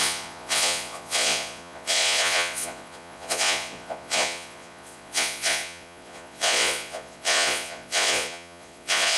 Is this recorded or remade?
remade